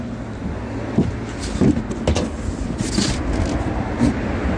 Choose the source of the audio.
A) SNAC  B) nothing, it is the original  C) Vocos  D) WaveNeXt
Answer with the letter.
B